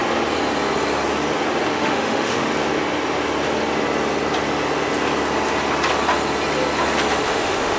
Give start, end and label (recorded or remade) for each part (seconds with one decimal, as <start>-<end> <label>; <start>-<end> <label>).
0.0-1.7 recorded; 1.7-2.5 remade; 2.5-7.2 recorded; 7.2-7.8 remade